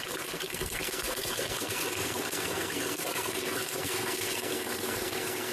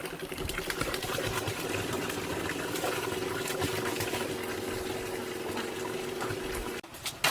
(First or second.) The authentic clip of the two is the second